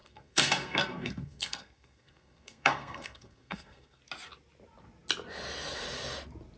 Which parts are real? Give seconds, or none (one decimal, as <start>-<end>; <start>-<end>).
4.0-6.6